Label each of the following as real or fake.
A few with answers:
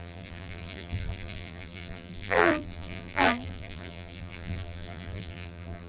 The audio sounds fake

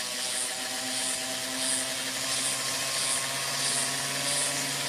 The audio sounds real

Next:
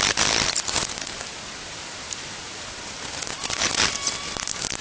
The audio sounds real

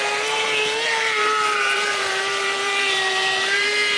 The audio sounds fake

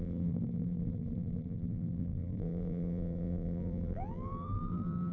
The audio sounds fake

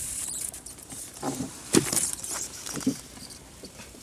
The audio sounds fake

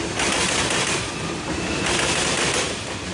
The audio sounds real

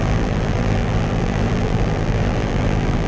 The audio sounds fake